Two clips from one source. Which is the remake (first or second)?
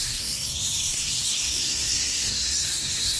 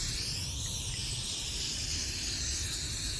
first